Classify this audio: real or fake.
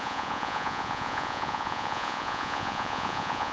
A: fake